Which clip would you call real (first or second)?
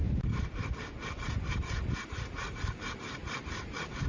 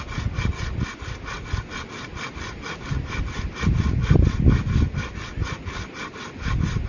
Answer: second